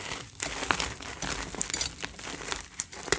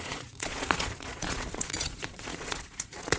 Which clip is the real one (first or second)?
first